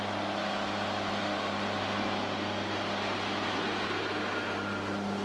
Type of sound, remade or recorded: recorded